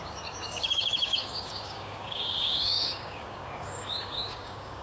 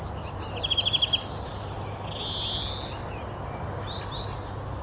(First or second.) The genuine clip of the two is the second